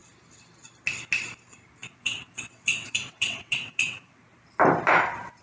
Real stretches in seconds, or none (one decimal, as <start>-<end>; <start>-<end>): 0.0-1.9; 4.2-5.4